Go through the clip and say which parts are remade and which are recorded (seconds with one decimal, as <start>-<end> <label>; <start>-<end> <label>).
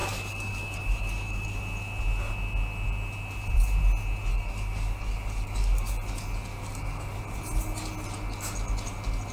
0.0-1.6 remade; 1.6-4.3 recorded; 4.3-5.9 remade; 5.9-6.5 recorded; 6.5-7.2 remade; 7.2-9.3 recorded